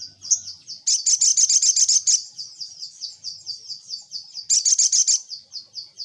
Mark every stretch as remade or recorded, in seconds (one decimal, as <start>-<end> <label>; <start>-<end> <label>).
0.0-6.0 recorded